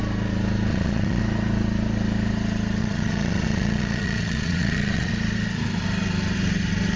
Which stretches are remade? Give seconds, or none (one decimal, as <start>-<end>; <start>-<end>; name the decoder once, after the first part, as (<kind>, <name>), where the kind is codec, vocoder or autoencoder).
0.7-1.2 (vocoder, Vocos); 2.8-5.1